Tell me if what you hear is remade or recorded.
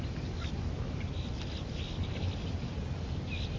recorded